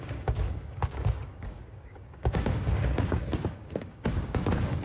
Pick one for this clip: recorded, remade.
remade